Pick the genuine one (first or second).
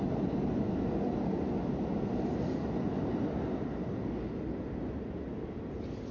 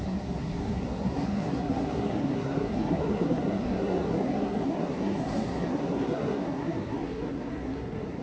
first